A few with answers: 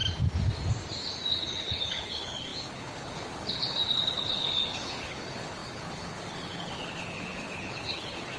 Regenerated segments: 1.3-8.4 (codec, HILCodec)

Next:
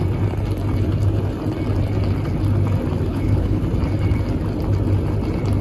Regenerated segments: 3.1-3.6 (codec, HILCodec)

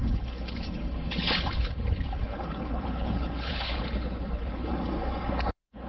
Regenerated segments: 0.0-4.7 (codec, HILCodec); 5.5-5.9

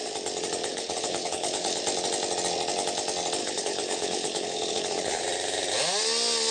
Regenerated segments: 0.7-1.8 (codec, HILCodec); 3.4-5.2

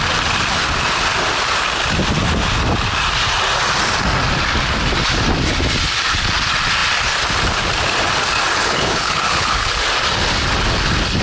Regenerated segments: 8.6-9.7 (codec, HILCodec)

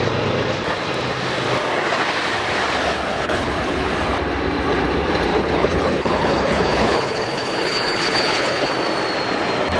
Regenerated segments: 3.1-3.9 (codec, HILCodec); 5.3-8.7